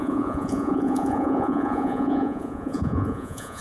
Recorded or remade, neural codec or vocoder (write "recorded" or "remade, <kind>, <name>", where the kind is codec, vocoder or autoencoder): remade, vocoder, Vocos